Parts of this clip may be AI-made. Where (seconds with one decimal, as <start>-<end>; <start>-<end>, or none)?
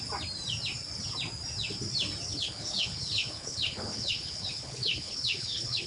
2.3-5.9